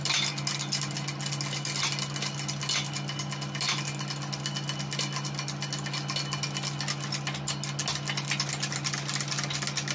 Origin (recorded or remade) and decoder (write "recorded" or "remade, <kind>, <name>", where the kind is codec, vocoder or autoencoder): recorded